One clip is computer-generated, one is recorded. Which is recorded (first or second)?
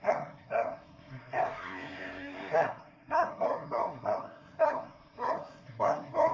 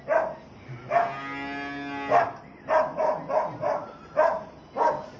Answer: second